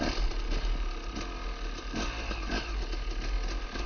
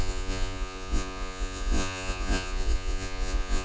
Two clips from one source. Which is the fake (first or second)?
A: second